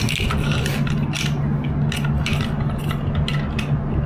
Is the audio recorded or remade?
recorded